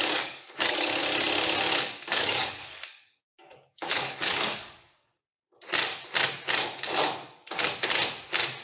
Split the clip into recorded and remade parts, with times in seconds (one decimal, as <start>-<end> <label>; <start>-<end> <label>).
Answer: 0.0-1.0 remade; 1.0-2.1 recorded; 2.1-5.1 remade; 5.1-8.6 recorded